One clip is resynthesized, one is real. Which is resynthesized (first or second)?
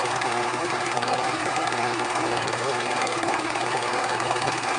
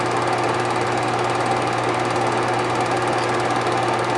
first